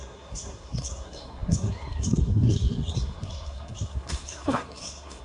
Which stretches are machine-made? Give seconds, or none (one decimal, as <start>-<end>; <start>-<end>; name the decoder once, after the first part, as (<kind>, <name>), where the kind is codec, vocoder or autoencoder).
0.0-5.2 (codec, SNAC)

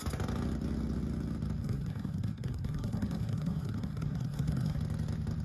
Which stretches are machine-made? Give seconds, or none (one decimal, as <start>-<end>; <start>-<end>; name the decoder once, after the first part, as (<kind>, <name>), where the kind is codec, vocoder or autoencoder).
1.6-4.8 (codec, SNAC)

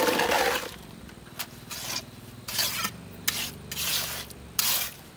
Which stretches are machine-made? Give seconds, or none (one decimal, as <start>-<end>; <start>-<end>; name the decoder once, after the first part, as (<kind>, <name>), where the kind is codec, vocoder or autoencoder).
none

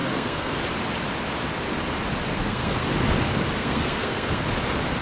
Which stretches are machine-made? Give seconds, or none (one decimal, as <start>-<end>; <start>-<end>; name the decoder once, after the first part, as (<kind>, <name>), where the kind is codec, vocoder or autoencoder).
0.0-0.6 (codec, SNAC); 2.3-2.9; 3.6-4.4

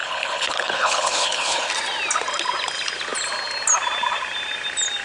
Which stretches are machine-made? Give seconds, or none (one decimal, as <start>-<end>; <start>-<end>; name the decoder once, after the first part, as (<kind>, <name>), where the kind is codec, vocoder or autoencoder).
0.0-1.7 (codec, HILCodec)

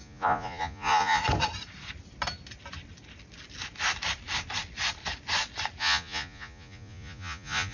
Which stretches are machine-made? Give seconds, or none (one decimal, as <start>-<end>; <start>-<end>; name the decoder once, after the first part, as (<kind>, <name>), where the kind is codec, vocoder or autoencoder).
0.0-1.2 (vocoder, Vocos); 5.8-7.7

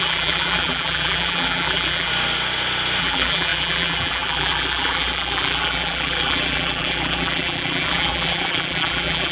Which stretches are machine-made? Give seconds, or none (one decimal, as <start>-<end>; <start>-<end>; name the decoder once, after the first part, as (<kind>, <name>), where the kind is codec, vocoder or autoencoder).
0.0-2.1 (vocoder, BigVGAN v2); 3.0-9.3